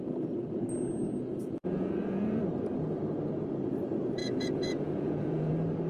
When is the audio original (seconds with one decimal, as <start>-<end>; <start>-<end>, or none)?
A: 0.0-1.6; 2.4-4.2; 5.5-5.9